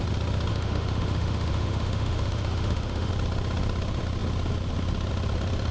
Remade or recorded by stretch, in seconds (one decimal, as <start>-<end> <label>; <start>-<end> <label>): 0.0-0.5 recorded; 0.5-3.1 remade; 3.1-5.7 recorded